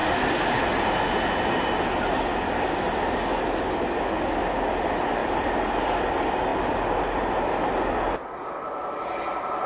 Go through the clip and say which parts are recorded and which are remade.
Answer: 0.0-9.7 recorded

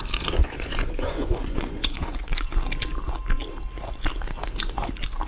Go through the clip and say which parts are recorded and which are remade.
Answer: 0.0-0.4 recorded; 0.4-2.5 remade; 2.5-5.3 recorded

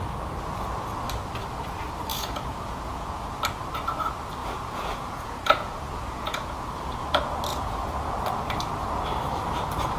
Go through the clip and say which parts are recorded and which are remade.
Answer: 0.0-2.1 recorded; 2.1-3.3 remade; 3.3-4.4 recorded; 4.4-6.6 remade; 6.6-7.5 recorded; 7.5-8.1 remade; 8.1-10.0 recorded

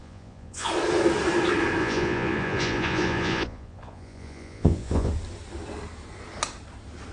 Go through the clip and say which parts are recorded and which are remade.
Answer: 0.0-0.7 remade; 0.7-1.8 recorded; 1.8-5.1 remade; 5.1-7.1 recorded

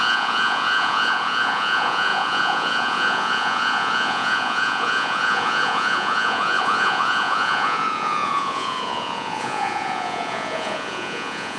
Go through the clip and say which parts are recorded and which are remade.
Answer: 0.0-11.6 remade

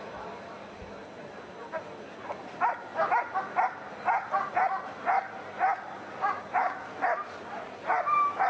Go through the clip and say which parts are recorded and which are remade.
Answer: 0.0-8.5 recorded

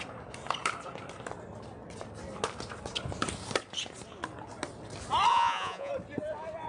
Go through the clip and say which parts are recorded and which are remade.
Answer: 0.0-5.3 recorded; 5.3-5.9 remade; 5.9-6.7 recorded